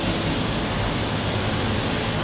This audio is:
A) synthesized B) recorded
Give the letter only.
B